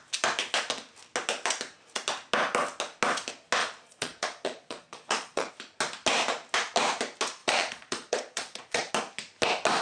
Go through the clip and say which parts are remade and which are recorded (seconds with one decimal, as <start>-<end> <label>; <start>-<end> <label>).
0.0-3.6 recorded; 3.6-5.5 remade; 5.5-7.4 recorded; 7.4-8.9 remade; 8.9-9.8 recorded